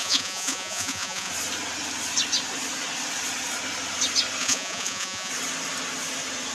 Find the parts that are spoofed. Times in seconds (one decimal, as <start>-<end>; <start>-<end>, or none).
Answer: 0.0-1.3; 4.4-5.3